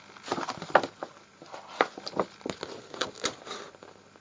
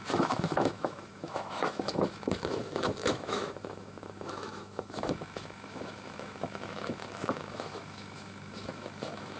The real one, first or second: first